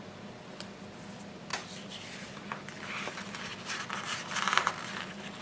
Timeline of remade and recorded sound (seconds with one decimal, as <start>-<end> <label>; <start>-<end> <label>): 0.0-3.5 recorded; 3.5-4.7 remade; 4.7-5.4 recorded